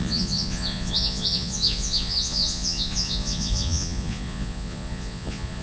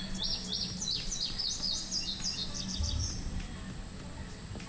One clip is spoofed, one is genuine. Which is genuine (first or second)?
second